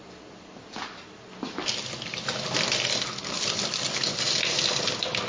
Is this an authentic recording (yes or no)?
no